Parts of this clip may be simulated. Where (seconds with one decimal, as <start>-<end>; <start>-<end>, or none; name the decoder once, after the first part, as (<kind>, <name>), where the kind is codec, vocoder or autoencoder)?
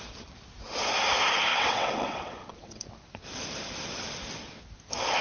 1.5-2.8 (vocoder, WaveNeXt)